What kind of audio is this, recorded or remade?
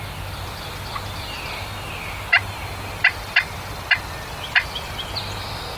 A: recorded